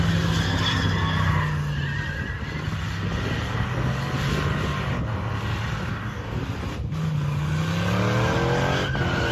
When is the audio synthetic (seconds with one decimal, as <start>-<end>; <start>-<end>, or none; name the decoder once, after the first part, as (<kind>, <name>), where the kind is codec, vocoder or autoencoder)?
5.9-6.4 (codec, DAC)